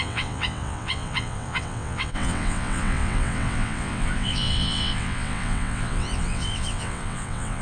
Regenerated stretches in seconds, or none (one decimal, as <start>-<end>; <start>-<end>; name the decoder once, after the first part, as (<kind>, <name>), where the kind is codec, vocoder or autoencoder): 0.0-7.6 (vocoder, WaveNeXt)